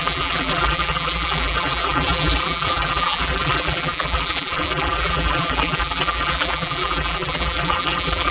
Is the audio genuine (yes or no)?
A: no